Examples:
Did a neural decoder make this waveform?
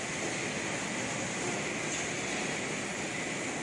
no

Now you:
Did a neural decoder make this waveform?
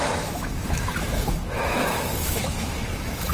yes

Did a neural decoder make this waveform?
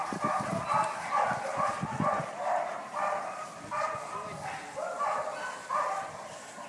no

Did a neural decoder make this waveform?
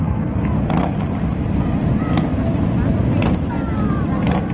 no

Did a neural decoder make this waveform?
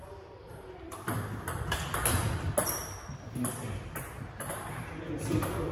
no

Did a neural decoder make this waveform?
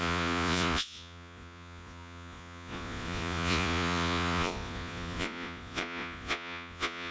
yes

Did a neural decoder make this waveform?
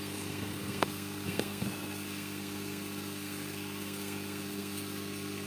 yes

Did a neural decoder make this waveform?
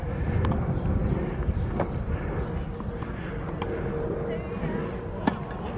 no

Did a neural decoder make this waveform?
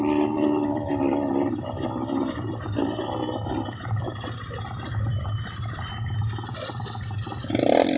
yes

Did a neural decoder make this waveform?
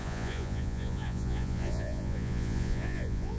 yes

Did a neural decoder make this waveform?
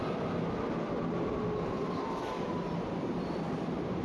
no